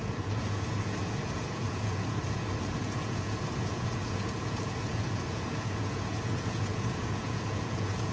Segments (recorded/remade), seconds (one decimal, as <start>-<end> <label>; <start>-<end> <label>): 0.0-8.1 remade